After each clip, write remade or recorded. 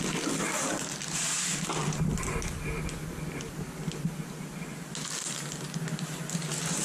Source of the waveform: recorded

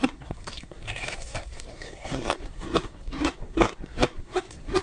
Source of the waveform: remade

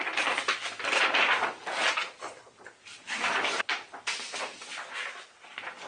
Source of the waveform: recorded